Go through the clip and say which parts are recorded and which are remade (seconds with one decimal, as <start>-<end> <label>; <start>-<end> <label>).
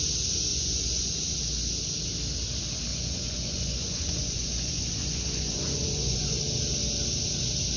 0.0-0.5 recorded; 0.5-1.4 remade; 1.4-2.9 recorded; 2.9-6.4 remade; 6.4-7.8 recorded